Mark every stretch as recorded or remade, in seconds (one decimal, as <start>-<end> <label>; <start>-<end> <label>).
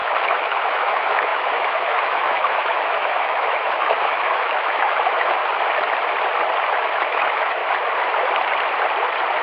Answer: 0.0-5.4 remade; 5.4-6.7 recorded; 6.7-7.6 remade; 7.6-9.4 recorded